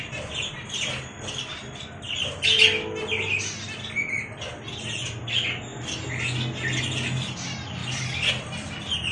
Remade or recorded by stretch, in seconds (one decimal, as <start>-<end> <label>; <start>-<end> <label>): 0.0-9.1 recorded